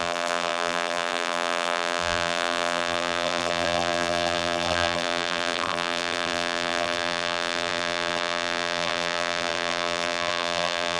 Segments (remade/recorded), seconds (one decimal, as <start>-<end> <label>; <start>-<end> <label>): 0.0-11.0 remade